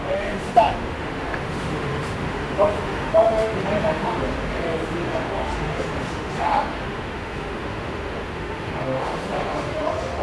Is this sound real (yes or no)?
no